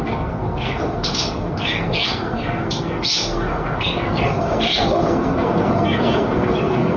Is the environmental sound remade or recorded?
remade